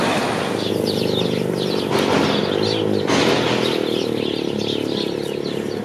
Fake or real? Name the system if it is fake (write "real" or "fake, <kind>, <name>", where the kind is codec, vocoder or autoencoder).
real